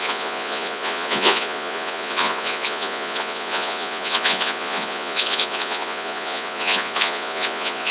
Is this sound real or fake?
fake